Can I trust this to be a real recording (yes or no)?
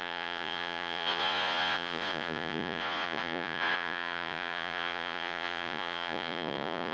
no